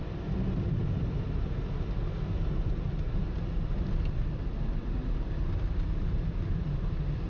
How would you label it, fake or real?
real